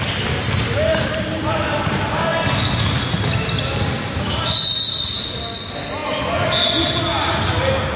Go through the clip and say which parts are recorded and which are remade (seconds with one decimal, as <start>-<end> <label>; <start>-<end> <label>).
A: 0.0-8.0 recorded